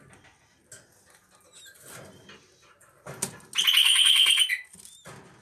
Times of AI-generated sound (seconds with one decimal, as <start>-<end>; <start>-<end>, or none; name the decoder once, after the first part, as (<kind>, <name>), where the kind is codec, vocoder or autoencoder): 3.8-4.4 (codec, SNAC)